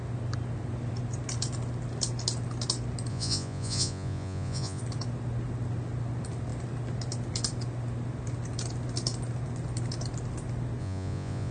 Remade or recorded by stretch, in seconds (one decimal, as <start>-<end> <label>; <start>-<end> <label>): 0.0-3.1 recorded; 3.1-4.8 remade; 4.8-10.8 recorded; 10.8-11.5 remade